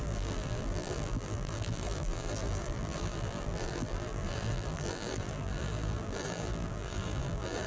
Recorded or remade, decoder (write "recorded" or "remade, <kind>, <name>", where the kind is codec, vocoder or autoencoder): remade, vocoder, BigVGAN v2